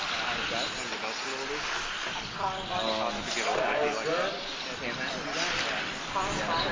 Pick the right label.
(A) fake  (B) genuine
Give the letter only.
B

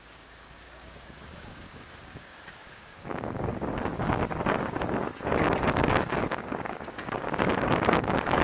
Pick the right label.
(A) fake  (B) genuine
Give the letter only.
A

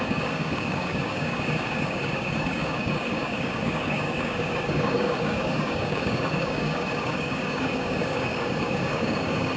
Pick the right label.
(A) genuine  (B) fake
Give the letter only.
B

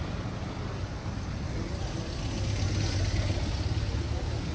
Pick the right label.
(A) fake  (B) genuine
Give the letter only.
B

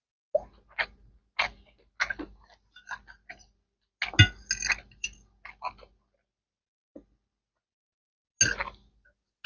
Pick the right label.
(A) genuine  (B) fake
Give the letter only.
A